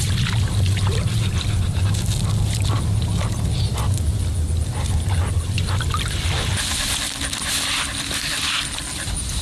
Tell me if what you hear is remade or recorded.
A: recorded